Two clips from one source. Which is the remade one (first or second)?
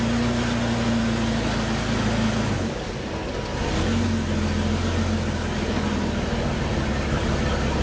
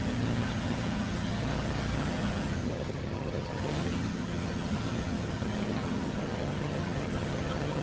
second